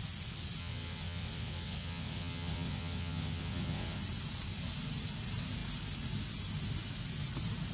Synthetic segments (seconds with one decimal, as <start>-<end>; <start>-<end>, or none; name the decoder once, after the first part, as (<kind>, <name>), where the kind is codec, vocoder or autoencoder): 0.6-4.0 (vocoder, WaveNeXt)